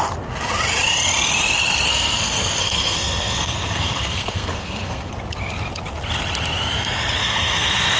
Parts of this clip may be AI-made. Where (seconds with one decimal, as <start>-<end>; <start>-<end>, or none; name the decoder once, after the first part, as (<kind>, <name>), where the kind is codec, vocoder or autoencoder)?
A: 1.9-5.1 (codec, SNAC); 7.2-8.0

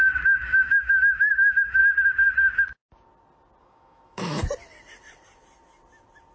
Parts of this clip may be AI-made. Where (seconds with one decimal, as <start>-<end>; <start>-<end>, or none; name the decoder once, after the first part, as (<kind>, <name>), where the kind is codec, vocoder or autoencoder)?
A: 0.0-1.8 (autoencoder, DAC-VAE); 3.6-4.4